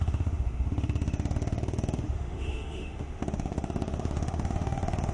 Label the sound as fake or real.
fake